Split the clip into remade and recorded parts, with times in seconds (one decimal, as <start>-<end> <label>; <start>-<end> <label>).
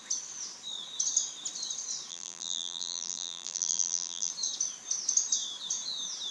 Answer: 0.0-2.1 recorded; 2.1-4.3 remade; 4.3-6.3 recorded